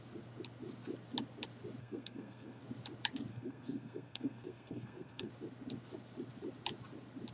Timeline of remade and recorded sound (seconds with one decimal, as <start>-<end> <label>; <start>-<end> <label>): 0.0-1.8 recorded; 1.8-2.6 remade; 2.6-3.3 recorded; 3.3-5.3 remade; 5.3-7.3 recorded